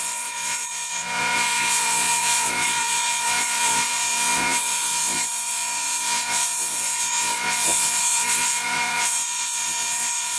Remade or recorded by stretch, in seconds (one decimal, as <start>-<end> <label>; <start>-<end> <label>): 0.0-10.4 remade

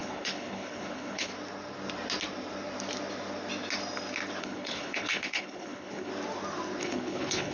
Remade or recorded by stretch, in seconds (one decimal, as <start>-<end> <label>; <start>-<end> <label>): 0.0-1.3 remade; 1.3-4.4 recorded; 4.4-6.1 remade; 6.1-6.8 recorded; 6.8-7.5 remade

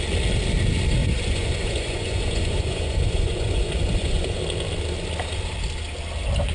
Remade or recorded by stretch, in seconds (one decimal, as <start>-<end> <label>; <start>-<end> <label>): 0.0-1.0 recorded; 1.0-4.4 remade; 4.4-6.5 recorded

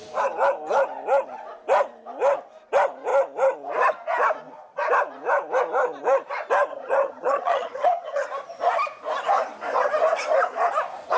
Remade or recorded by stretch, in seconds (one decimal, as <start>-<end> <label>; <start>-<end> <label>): 0.0-6.7 recorded; 6.7-8.3 remade; 8.3-11.2 recorded